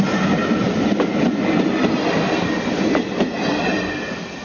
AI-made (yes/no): no